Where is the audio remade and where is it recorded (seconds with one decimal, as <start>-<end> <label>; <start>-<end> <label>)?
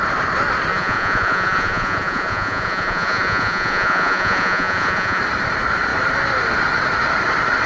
0.0-0.7 recorded; 0.7-5.2 remade; 5.2-7.7 recorded